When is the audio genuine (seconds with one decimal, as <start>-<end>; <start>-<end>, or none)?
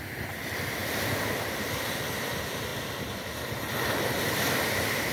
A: 0.0-0.8; 1.3-5.1